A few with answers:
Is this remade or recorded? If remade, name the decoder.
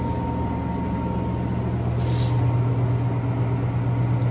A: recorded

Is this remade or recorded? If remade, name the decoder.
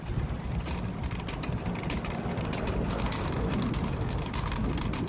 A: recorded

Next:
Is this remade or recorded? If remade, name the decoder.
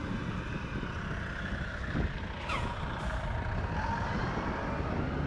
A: recorded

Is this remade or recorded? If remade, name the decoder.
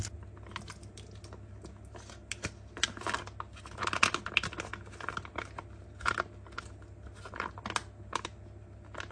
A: recorded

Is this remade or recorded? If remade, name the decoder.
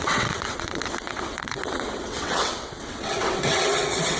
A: remade, vocoder, WaveNeXt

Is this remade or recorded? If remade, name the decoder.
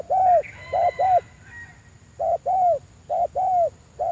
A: recorded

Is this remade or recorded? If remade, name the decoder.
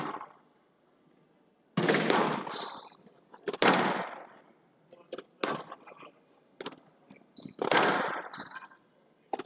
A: recorded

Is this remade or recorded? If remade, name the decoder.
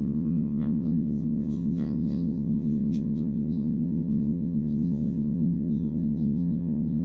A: remade, vocoder, WaveNeXt